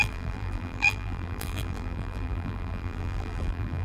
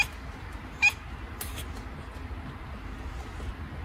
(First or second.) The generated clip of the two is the first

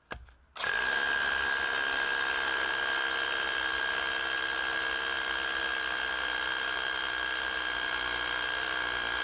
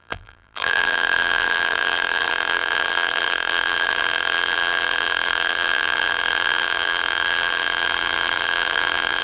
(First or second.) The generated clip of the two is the second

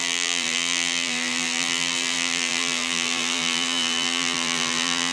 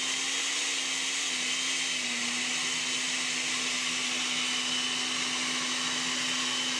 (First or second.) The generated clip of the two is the first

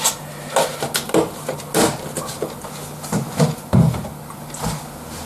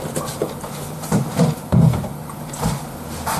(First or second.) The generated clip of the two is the second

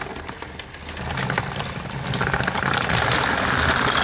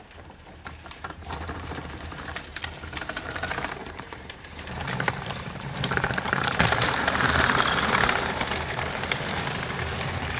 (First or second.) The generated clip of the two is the second